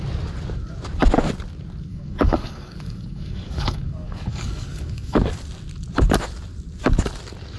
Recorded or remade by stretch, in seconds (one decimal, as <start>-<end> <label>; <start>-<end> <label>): 0.0-1.9 recorded; 1.9-5.2 remade; 5.2-7.6 recorded